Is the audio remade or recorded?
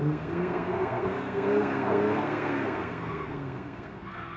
remade